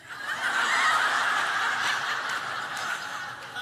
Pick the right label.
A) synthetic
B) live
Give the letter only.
B